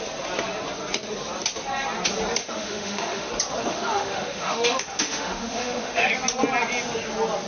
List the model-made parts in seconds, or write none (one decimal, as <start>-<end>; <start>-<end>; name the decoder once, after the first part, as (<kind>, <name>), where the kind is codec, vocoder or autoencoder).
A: 2.4-3.3 (autoencoder, DAC-VAE); 3.7-6.1